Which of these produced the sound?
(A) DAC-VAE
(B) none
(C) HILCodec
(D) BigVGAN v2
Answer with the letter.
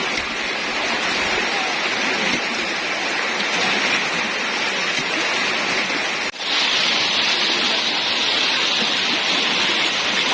B